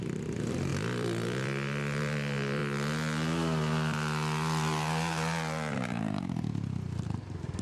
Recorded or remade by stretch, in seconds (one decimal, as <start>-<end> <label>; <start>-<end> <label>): 0.0-2.6 remade; 2.6-7.6 recorded